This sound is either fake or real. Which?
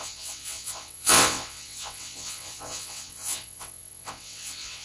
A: fake